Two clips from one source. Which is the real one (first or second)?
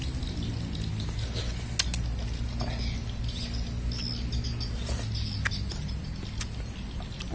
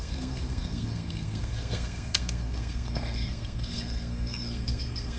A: first